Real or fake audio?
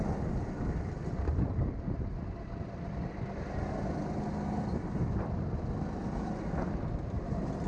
real